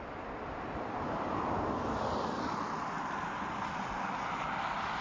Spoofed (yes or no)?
no